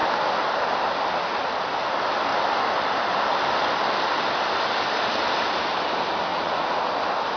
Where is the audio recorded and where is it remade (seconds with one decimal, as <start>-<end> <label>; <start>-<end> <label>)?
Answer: 0.0-6.3 recorded; 6.3-6.9 remade; 6.9-7.4 recorded